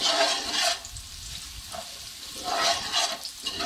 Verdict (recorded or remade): recorded